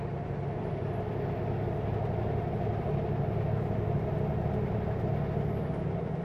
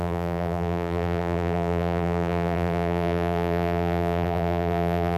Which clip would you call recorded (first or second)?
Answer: first